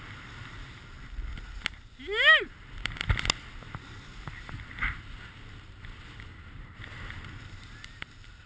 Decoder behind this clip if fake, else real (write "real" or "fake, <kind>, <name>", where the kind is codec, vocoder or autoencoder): real